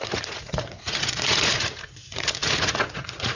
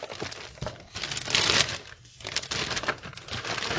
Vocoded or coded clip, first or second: first